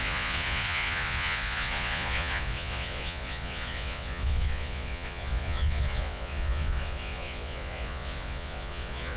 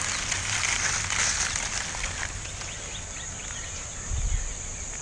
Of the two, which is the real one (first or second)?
second